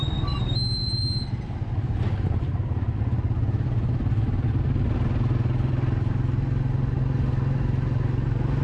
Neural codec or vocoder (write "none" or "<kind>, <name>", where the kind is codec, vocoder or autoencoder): none